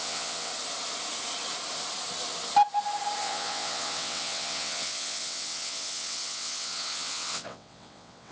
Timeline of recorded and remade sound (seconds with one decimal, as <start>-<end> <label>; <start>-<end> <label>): 0.0-0.5 remade; 0.5-3.2 recorded; 3.2-8.3 remade